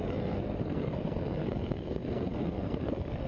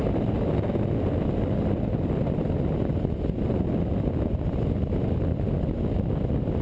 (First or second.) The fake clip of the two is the first